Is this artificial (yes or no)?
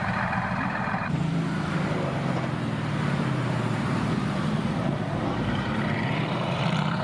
yes